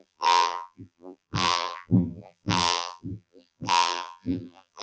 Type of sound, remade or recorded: remade